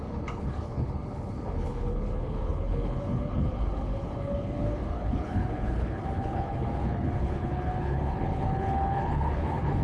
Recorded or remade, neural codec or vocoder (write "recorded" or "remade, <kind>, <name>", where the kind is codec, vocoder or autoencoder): remade, codec, HILCodec